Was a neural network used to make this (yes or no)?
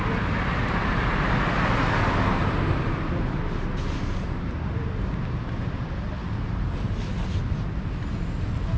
no